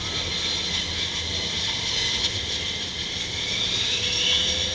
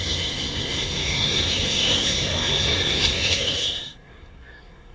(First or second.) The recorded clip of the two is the first